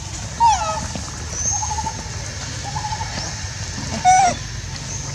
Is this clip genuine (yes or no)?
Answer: yes